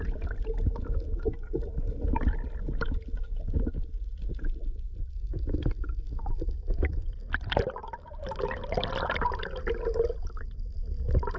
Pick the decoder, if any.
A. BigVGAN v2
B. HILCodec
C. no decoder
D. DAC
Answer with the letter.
C